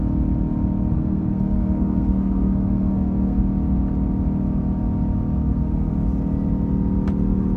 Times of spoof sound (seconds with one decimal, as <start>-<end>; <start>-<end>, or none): 0.9-3.4; 5.4-5.9